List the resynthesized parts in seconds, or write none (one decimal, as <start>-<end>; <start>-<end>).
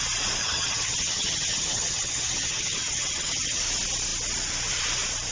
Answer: 0.4-3.6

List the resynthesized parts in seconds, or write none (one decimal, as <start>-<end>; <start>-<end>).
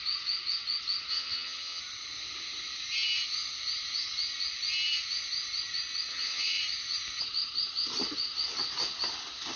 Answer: 1.1-1.8; 6.1-6.6